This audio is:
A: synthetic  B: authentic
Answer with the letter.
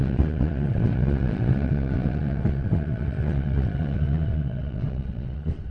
A